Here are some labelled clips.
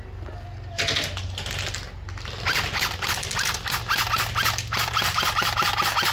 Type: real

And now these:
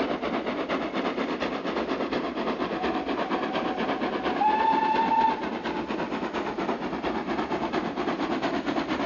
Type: real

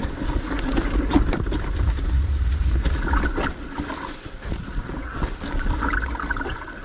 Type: real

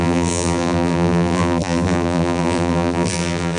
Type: fake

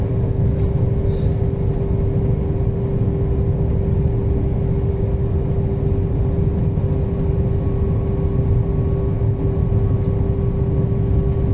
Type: real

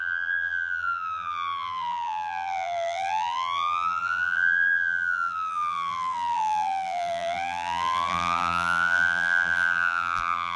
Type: fake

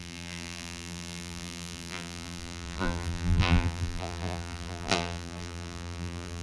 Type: fake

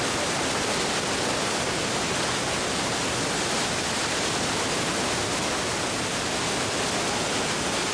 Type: real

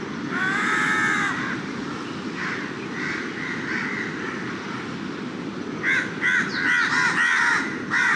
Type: real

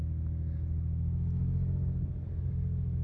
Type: real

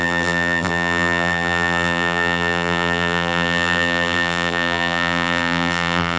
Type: fake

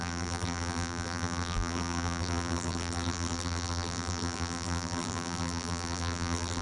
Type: fake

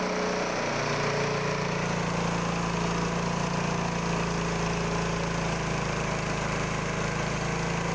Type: fake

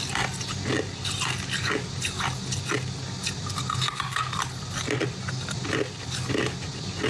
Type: real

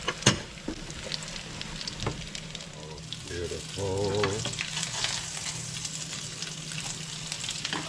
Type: real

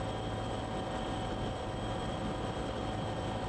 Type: fake